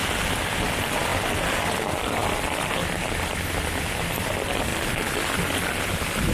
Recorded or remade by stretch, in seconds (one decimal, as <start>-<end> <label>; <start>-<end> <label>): 0.0-0.7 recorded; 0.7-1.1 remade; 1.1-1.7 recorded; 1.7-4.7 remade; 4.7-5.4 recorded; 5.4-6.3 remade